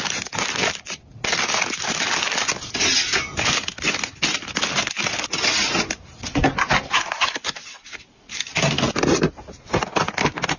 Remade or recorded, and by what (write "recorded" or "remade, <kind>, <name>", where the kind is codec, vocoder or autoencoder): recorded